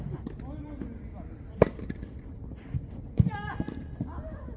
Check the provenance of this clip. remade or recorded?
recorded